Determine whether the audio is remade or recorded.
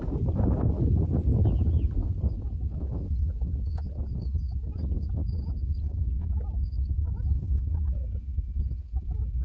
recorded